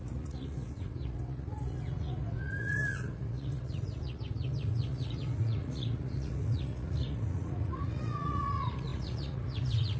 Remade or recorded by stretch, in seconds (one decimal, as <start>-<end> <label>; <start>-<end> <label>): 0.0-10.0 remade